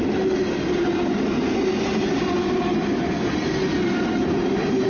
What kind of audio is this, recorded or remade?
recorded